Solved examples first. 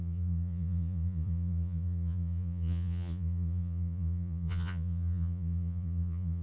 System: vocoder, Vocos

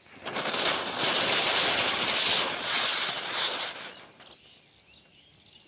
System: none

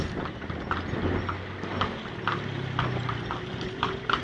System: none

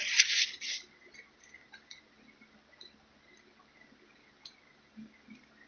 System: none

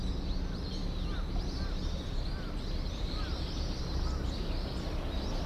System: none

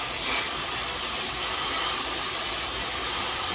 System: none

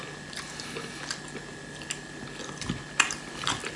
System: none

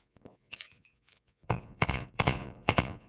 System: vocoder, Vocos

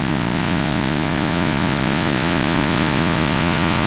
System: vocoder, Vocos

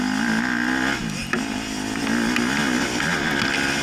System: none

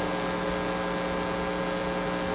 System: none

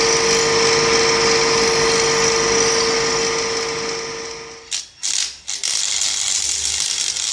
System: none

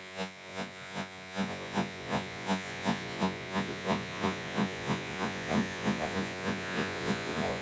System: vocoder, Vocos